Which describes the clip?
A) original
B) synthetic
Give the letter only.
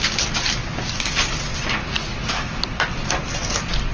A